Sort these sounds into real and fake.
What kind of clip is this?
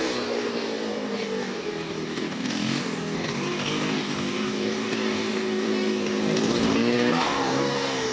fake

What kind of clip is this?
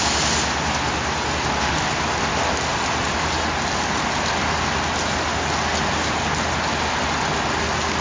real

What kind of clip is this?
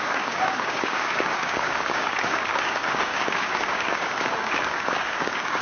fake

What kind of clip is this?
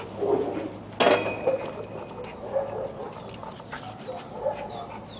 real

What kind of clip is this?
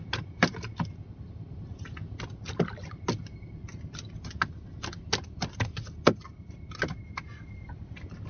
real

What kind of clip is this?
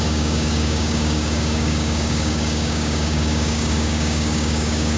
fake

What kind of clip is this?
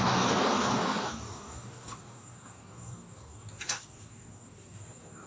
fake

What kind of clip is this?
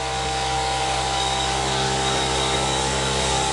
fake